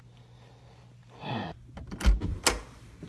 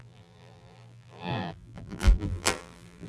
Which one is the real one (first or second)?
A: first